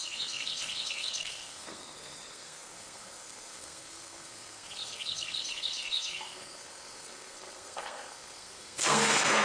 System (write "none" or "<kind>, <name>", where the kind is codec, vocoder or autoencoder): codec, SNAC